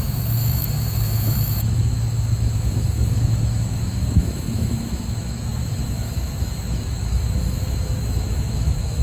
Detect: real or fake fake